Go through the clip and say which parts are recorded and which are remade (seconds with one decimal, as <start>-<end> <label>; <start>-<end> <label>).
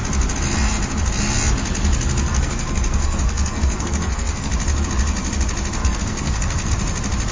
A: 0.0-2.2 recorded; 2.2-4.5 remade; 4.5-5.8 recorded; 5.8-6.7 remade; 6.7-7.3 recorded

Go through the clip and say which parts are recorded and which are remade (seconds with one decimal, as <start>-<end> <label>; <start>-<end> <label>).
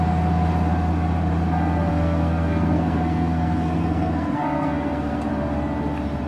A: 0.0-1.9 recorded; 1.9-5.3 remade; 5.3-6.3 recorded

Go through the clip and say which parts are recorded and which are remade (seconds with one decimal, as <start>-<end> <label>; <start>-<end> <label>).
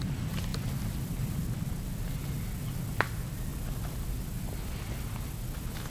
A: 0.0-5.9 recorded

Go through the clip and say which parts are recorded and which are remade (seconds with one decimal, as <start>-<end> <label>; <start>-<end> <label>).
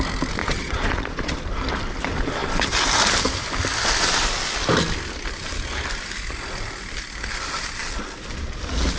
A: 0.0-0.4 recorded; 0.4-1.3 remade; 1.3-9.0 recorded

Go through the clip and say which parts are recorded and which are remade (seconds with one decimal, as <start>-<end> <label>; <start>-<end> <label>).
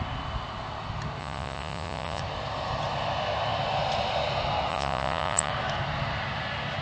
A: 0.0-1.2 recorded; 1.2-2.2 remade; 2.2-4.7 recorded; 4.7-5.5 remade; 5.5-6.8 recorded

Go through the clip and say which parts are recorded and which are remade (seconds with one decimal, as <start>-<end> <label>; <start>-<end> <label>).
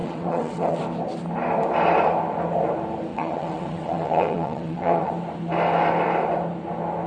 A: 0.0-0.8 remade; 0.8-3.1 recorded; 3.1-5.1 remade; 5.1-7.1 recorded